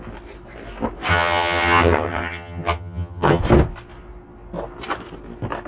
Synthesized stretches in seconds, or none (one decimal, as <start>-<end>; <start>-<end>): 1.1-3.4